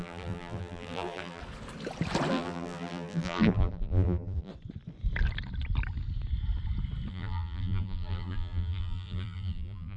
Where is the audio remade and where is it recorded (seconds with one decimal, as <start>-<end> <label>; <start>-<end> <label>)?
0.0-1.4 remade; 1.4-2.3 recorded; 2.3-4.5 remade; 4.5-7.1 recorded; 7.1-10.0 remade